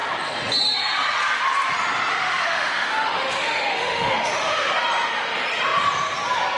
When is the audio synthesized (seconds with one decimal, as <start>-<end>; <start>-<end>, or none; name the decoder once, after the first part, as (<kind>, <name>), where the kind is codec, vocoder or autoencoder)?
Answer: 2.1-4.7 (autoencoder, DAC-VAE)